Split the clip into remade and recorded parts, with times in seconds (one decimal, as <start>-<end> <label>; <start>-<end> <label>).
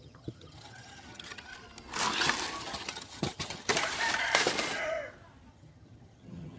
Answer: 0.0-1.5 remade; 1.5-2.6 recorded; 2.6-3.7 remade; 3.7-5.5 recorded; 5.5-6.6 remade